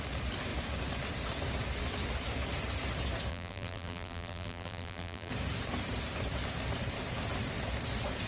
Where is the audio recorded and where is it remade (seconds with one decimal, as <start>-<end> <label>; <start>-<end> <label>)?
0.0-3.3 recorded; 3.3-5.3 remade; 5.3-8.3 recorded